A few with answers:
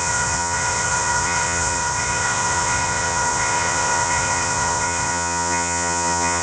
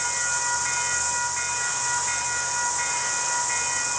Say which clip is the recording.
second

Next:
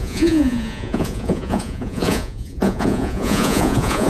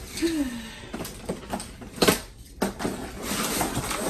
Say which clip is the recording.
second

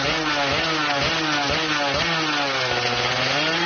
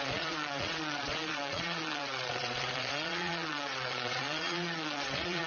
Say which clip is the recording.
first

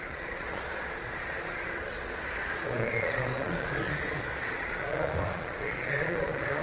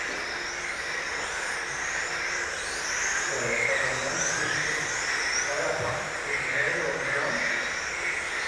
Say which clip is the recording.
second